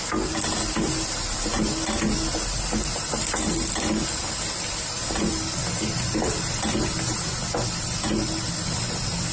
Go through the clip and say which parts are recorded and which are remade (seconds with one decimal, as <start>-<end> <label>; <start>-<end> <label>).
0.0-9.3 recorded